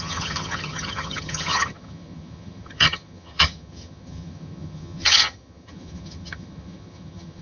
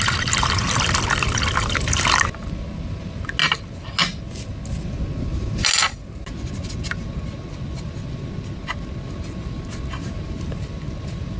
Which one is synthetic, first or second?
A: first